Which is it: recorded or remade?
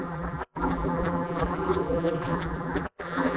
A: remade